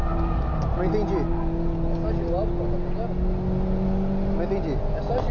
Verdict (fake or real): real